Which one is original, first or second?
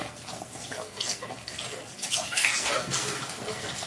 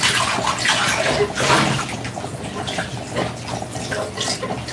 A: second